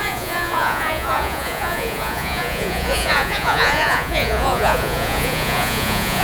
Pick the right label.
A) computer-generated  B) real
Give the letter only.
A